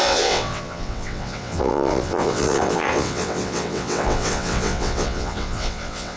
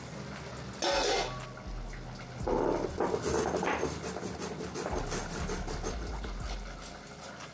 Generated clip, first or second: first